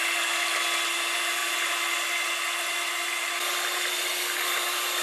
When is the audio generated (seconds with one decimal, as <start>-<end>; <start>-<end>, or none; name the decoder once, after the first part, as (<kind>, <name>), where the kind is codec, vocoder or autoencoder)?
none